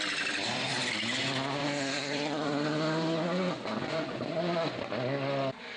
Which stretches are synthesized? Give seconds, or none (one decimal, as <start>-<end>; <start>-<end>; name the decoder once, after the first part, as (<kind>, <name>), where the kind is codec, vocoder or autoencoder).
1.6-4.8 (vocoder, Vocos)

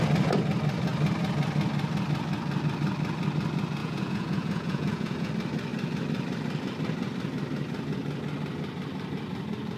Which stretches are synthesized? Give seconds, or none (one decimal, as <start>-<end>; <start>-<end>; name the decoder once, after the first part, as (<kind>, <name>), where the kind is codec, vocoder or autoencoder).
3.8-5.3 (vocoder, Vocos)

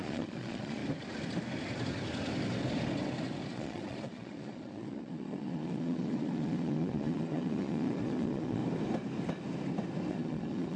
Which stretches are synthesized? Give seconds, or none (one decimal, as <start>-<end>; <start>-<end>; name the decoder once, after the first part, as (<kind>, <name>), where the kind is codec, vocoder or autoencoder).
0.0-0.8 (vocoder, Vocos); 3.5-8.6; 10.1-10.8